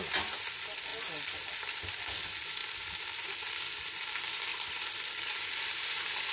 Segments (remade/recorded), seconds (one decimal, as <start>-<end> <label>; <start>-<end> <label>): 0.0-2.6 remade; 2.6-3.1 recorded; 3.1-6.3 remade